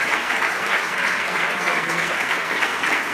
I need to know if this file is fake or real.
fake